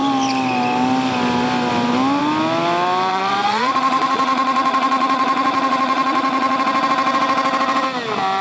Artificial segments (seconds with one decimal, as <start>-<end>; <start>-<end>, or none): 3.1-6.6